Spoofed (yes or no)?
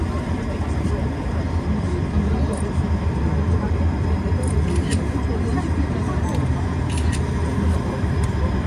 yes